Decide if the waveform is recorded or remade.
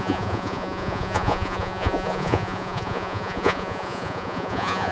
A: remade